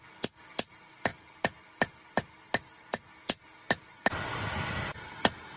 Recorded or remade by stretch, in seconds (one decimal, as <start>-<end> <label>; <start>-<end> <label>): 0.0-5.6 recorded